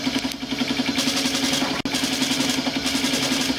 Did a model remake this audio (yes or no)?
no